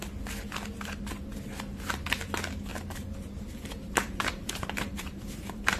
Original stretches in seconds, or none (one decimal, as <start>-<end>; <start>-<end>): 0.0-2.7